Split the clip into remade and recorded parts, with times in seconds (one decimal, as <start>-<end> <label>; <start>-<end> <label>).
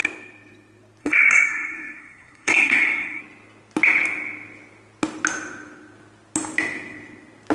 0.0-1.0 recorded; 1.0-3.2 remade; 3.2-7.5 recorded